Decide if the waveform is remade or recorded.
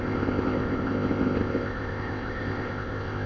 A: remade